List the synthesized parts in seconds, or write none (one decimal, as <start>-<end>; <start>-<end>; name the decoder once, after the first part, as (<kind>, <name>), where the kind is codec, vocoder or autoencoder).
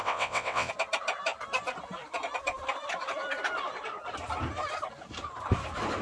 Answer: 0.0-0.7 (vocoder, WaveNeXt)